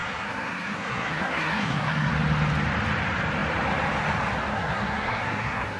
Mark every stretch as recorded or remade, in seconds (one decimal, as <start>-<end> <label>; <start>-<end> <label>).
0.0-2.1 remade; 2.1-4.5 recorded; 4.5-5.8 remade